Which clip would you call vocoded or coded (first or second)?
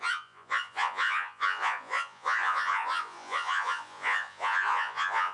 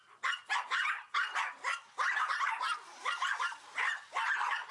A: first